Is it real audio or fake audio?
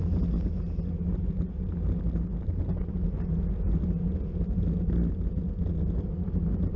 real